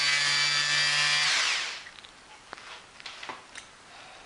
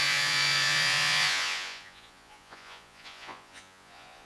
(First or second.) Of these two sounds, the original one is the first